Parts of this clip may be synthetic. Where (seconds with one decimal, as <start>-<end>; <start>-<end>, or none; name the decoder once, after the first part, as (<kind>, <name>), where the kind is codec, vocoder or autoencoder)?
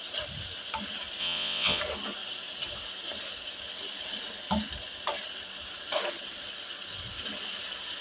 1.2-1.8 (vocoder, WaveNeXt)